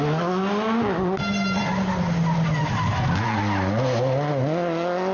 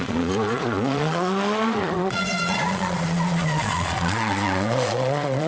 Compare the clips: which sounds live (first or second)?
first